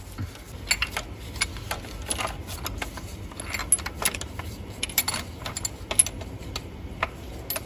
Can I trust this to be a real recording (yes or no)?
yes